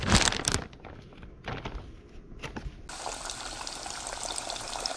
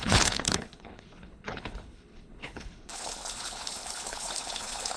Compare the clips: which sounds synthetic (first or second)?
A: second